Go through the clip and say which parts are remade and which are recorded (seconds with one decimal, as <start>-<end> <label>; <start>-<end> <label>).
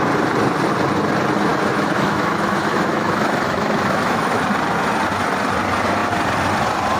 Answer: 0.0-1.5 recorded; 1.5-4.4 remade; 4.4-7.0 recorded